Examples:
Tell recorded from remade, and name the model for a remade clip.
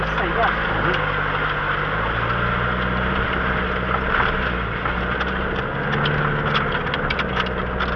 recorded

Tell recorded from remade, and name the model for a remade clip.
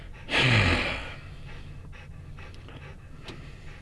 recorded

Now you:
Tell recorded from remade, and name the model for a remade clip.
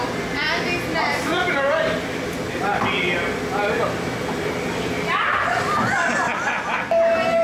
recorded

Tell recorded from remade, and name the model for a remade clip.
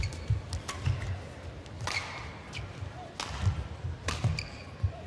recorded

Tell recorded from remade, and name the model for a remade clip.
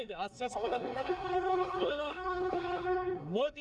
remade, codec, SNAC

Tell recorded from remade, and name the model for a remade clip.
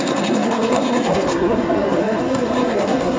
remade, codec, SNAC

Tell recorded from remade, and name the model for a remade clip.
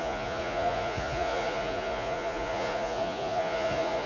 remade, vocoder, Vocos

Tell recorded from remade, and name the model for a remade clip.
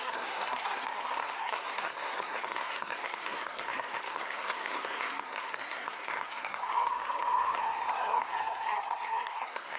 remade, codec, SNAC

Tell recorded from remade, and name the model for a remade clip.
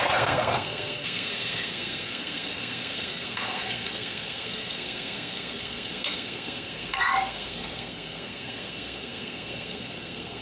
remade, codec, SNAC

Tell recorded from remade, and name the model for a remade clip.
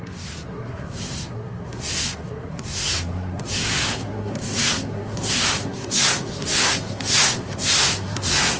remade, codec, SNAC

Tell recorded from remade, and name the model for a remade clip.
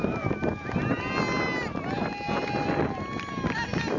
recorded